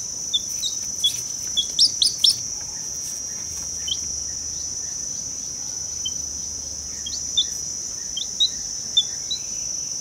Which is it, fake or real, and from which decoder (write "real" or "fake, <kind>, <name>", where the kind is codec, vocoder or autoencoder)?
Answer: real